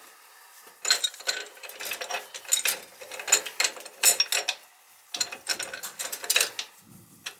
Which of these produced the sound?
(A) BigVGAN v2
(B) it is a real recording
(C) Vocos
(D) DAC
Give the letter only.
B